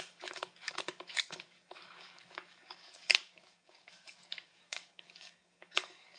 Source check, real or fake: fake